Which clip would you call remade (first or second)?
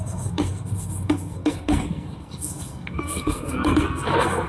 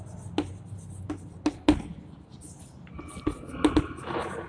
first